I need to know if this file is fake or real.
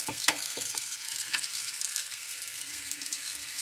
fake